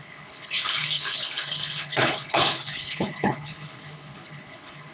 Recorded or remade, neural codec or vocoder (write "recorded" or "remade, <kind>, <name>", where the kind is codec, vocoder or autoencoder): remade, codec, HILCodec